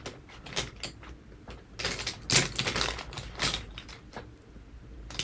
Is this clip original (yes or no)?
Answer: yes